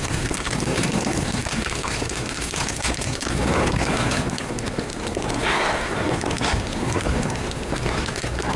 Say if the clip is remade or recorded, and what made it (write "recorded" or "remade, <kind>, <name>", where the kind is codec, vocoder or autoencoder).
remade, codec, SNAC